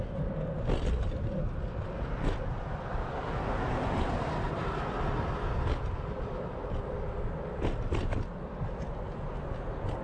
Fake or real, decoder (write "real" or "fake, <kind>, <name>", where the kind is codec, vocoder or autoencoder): real